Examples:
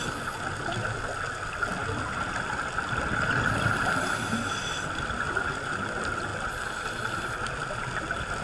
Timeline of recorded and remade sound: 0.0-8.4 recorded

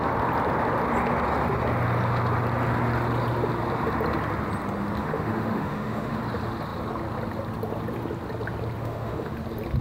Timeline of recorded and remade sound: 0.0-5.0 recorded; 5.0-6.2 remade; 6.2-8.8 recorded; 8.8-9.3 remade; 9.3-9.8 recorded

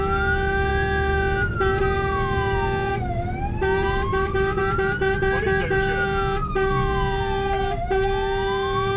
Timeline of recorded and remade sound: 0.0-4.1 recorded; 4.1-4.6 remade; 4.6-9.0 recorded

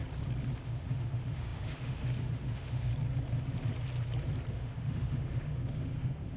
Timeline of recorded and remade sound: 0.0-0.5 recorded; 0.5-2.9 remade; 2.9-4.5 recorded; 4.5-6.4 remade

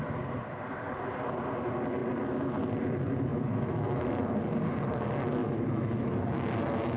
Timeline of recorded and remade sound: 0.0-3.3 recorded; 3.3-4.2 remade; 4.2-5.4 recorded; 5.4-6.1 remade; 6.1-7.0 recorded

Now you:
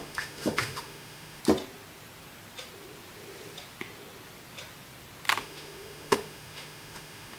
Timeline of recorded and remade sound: 0.0-1.4 remade; 1.4-5.4 recorded; 5.4-7.4 remade

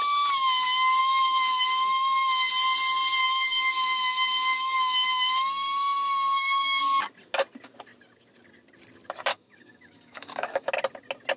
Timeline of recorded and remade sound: 0.0-1.0 recorded; 1.0-2.5 remade; 2.5-3.2 recorded; 3.2-6.8 remade; 6.8-9.3 recorded; 9.3-10.7 remade; 10.7-11.4 recorded

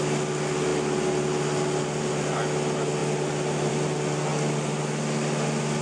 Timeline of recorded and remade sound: 0.0-5.8 recorded